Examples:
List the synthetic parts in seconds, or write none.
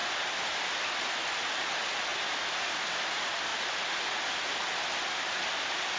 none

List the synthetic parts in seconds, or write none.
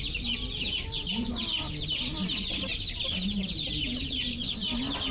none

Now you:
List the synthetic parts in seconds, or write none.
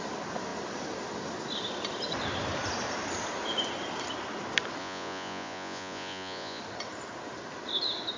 4.8-6.6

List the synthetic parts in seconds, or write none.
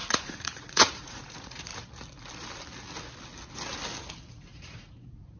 0.0-1.7; 4.3-5.4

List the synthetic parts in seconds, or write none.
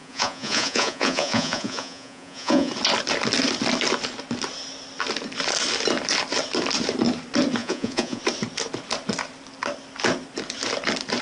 0.0-2.7; 7.6-8.2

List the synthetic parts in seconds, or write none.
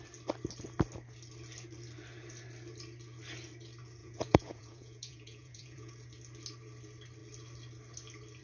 4.0-5.9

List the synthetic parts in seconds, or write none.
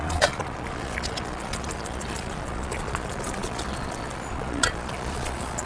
0.0-5.7